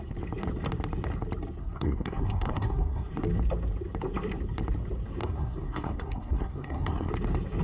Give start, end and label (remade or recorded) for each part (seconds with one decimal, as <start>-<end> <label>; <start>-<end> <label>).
0.0-1.6 recorded; 1.6-3.1 remade; 3.1-5.2 recorded; 5.2-7.1 remade; 7.1-7.6 recorded